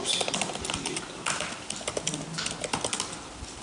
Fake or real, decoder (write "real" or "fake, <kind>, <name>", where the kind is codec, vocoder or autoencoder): real